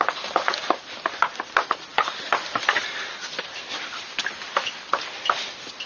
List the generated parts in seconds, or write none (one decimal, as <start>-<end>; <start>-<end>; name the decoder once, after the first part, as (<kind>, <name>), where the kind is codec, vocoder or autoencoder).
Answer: none